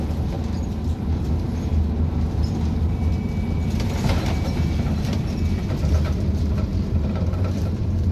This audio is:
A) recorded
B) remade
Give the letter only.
B